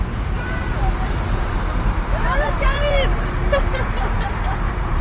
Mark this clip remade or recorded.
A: remade